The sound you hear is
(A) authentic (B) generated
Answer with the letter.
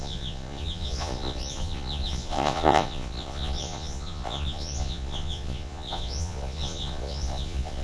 B